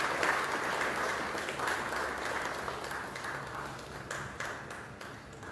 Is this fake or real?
real